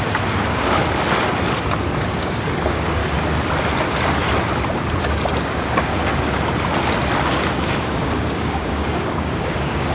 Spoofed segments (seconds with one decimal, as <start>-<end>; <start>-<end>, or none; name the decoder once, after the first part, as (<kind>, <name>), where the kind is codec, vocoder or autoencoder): 0.0-0.8 (codec, DAC); 2.0-3.0; 5.0-6.0; 7.3-9.9